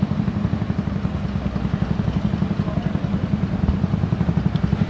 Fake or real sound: real